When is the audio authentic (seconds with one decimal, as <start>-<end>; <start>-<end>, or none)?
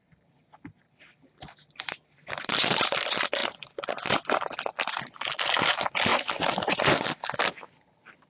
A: 0.0-8.3